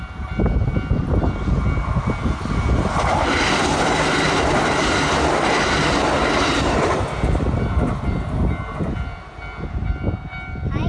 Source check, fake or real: real